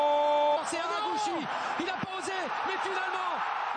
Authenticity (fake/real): real